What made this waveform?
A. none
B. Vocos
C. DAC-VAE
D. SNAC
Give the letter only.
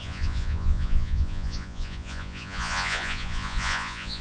B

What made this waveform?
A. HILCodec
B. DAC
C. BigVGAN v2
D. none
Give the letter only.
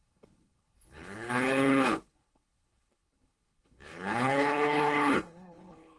A